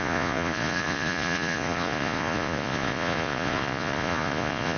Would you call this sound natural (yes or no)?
no